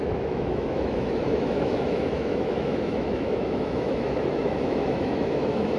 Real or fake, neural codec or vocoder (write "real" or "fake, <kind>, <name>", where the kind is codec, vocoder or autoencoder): fake, autoencoder, DAC-VAE